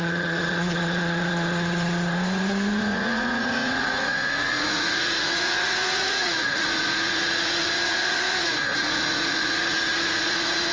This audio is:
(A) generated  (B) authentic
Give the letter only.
A